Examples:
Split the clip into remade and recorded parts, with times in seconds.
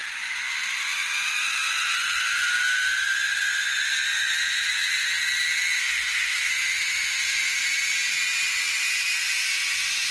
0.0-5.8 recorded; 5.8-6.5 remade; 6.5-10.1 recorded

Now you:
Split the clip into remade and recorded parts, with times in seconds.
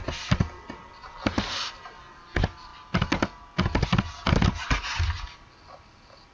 0.0-6.3 recorded